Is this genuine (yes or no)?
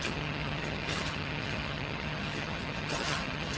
no